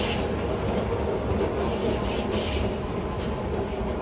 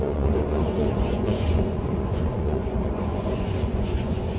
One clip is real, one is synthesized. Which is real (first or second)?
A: first